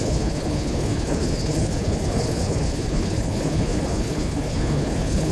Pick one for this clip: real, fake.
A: fake